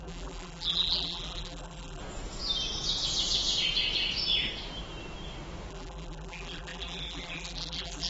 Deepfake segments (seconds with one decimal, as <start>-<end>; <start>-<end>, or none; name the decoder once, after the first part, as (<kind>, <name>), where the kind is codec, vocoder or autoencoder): 0.0-2.0 (vocoder, BigVGAN v2); 5.7-8.1